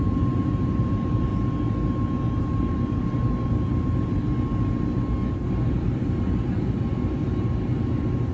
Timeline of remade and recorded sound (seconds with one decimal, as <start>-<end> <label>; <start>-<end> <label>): 0.0-1.3 remade; 1.3-2.4 recorded; 2.4-4.2 remade; 4.2-5.3 recorded; 5.3-8.3 remade